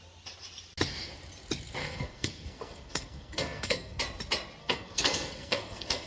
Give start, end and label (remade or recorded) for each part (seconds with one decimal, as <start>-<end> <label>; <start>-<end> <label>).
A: 0.0-1.8 recorded; 1.8-4.0 remade; 4.0-4.6 recorded; 4.6-6.1 remade